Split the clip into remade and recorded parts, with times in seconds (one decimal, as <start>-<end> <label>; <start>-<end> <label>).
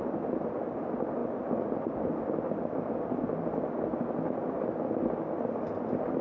0.0-6.2 recorded